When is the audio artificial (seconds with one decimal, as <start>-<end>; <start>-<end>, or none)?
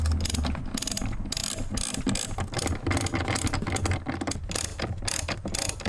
none